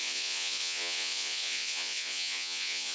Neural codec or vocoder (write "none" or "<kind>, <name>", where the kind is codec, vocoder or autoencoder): vocoder, Vocos